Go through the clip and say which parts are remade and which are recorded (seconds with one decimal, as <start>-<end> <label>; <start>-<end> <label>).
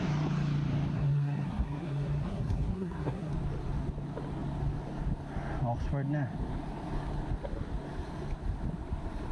0.0-0.9 recorded; 0.9-3.3 remade; 3.3-9.3 recorded